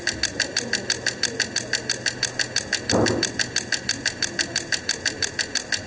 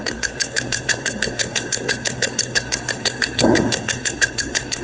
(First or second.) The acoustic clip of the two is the first